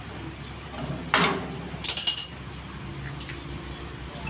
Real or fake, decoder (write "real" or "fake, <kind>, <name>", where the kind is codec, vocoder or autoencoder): real